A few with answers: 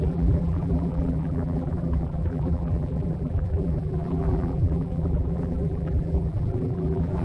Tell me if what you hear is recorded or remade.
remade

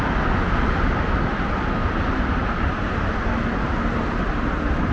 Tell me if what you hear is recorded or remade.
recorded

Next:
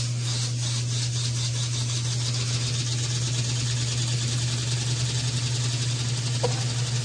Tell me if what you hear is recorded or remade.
recorded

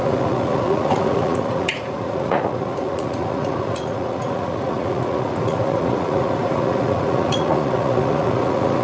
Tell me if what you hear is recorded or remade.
remade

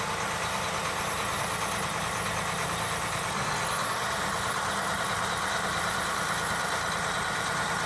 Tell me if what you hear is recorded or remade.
recorded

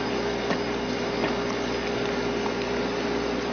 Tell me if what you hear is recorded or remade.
recorded